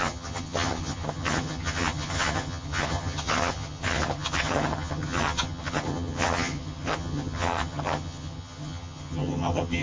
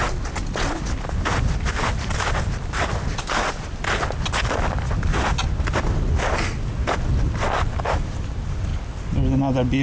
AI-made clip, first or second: first